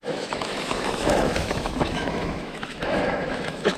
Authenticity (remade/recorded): remade